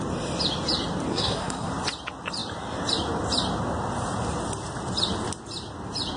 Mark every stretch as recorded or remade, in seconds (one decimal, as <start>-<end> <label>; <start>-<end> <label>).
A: 0.0-1.1 recorded; 1.1-1.7 remade; 1.7-6.2 recorded